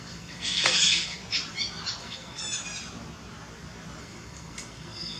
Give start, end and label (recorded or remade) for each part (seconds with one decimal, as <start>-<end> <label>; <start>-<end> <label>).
0.0-1.2 remade; 1.2-2.0 recorded; 2.0-2.4 remade; 2.4-4.0 recorded; 4.0-5.2 remade